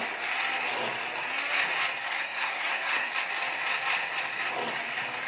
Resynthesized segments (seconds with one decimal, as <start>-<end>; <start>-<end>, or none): 2.1-3.1